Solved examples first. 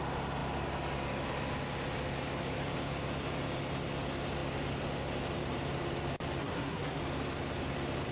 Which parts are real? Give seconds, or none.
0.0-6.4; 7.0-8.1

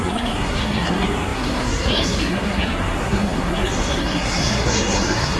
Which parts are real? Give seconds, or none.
none